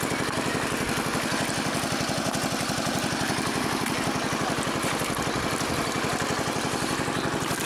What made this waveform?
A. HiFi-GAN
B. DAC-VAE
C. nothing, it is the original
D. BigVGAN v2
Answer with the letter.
C